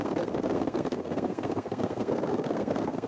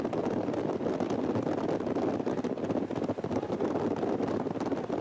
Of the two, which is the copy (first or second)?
first